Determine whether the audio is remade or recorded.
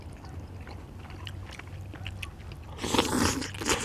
recorded